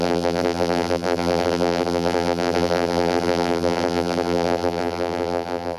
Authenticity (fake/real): fake